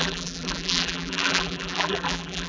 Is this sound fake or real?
fake